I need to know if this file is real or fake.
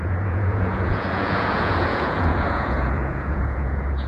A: fake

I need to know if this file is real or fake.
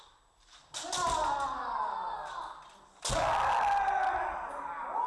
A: real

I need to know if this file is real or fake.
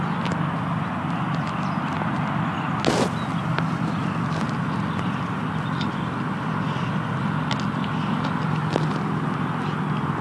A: real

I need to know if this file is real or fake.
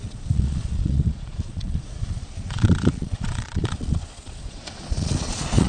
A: fake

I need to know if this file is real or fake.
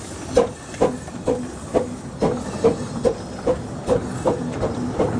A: real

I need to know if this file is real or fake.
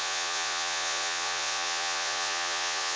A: fake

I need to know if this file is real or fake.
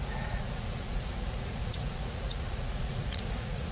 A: fake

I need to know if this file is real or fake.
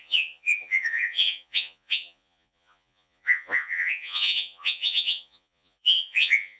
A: fake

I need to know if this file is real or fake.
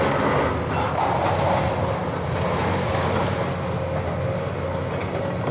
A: real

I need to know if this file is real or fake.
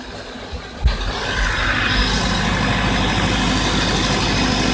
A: real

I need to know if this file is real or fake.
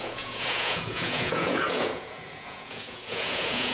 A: fake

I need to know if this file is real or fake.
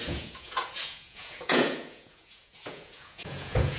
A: fake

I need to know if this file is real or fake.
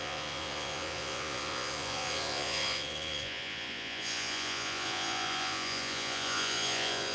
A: fake